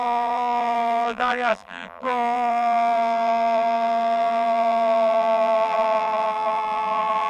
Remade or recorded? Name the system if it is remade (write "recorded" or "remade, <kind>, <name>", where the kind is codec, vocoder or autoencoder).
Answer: remade, vocoder, BigVGAN v2